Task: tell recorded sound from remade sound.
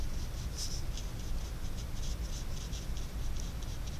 recorded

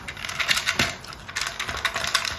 recorded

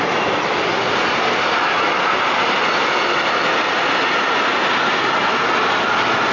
recorded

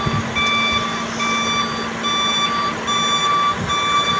recorded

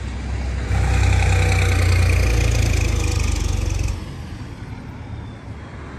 recorded